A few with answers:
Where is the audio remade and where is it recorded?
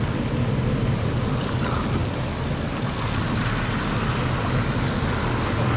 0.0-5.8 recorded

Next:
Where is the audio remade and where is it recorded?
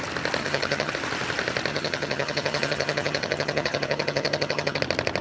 0.0-0.4 recorded; 0.4-0.9 remade; 0.9-1.7 recorded; 1.7-4.8 remade; 4.8-5.2 recorded